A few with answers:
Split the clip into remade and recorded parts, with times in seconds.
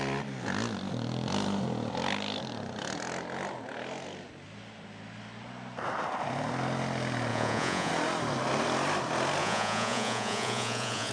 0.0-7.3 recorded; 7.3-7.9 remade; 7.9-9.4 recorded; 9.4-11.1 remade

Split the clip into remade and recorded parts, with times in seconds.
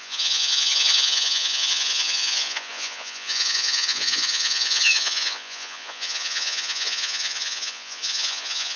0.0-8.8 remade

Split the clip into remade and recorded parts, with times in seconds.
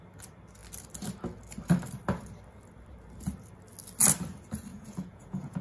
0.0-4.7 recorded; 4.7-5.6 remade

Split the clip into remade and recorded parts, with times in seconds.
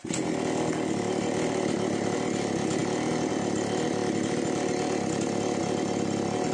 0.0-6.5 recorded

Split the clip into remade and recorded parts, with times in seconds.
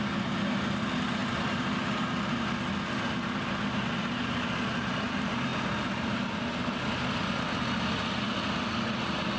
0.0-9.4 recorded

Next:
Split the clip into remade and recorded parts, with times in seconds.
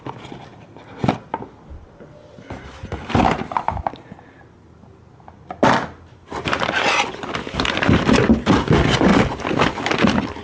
0.0-10.4 recorded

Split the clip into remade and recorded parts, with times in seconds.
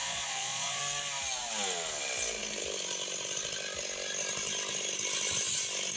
0.0-0.8 remade; 0.8-6.0 recorded